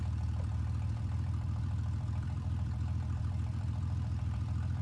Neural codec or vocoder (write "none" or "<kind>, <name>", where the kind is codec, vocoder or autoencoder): vocoder, BigVGAN v2